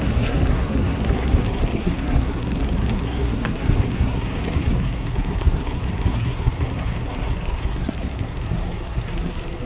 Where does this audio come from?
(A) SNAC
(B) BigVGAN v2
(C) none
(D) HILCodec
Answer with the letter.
A